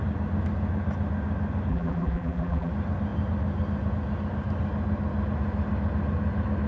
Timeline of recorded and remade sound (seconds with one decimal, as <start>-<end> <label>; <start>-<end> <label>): 0.0-1.7 recorded; 1.7-2.7 remade; 2.7-6.7 recorded